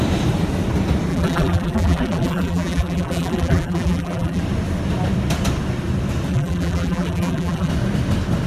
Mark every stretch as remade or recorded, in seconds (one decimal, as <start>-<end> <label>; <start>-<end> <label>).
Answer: 0.0-1.1 recorded; 1.1-4.4 remade; 4.4-6.3 recorded; 6.3-7.7 remade; 7.7-8.5 recorded